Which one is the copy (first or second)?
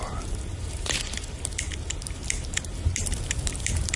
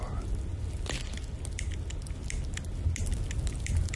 first